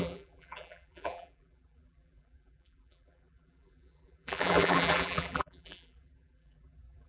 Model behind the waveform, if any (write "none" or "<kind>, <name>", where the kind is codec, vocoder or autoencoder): vocoder, BigVGAN v2